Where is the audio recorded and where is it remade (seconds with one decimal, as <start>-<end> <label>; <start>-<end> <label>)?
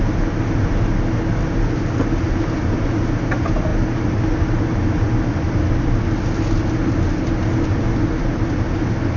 0.0-9.2 recorded